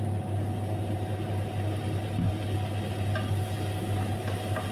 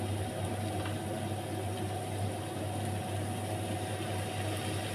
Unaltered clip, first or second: second